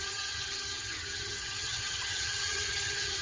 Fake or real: fake